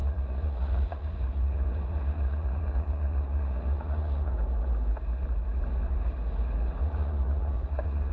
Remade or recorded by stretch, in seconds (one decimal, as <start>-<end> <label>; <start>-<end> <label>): 0.0-4.3 remade; 4.3-6.8 recorded; 6.8-8.1 remade